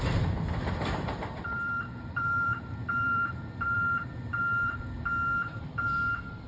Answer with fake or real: fake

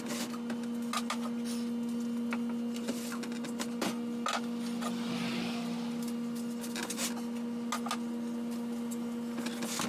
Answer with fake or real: real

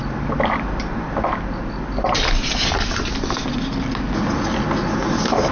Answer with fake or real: real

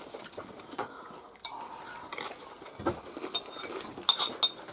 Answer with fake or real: real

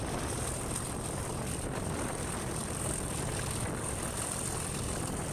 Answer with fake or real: fake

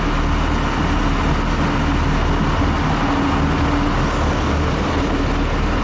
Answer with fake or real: real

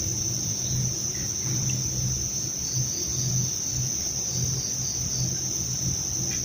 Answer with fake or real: real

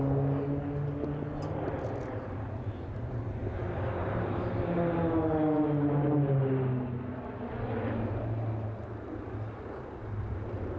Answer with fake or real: real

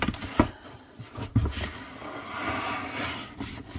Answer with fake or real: real